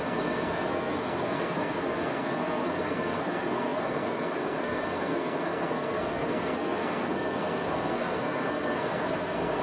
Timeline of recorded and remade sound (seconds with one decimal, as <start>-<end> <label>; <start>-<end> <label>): 0.0-9.6 remade